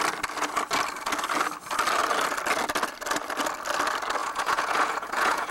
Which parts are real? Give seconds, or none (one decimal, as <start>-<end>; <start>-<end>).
0.0-4.2